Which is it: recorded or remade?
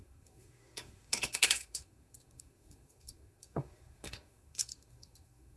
remade